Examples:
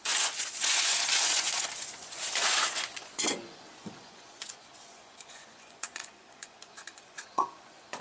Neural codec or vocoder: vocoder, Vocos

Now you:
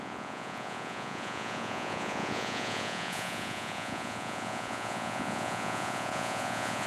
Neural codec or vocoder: vocoder, Vocos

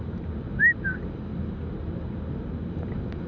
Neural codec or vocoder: none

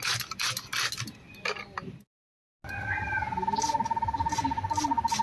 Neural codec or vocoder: none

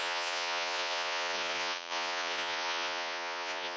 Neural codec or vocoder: vocoder, Vocos